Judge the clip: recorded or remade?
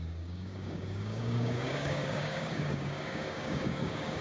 remade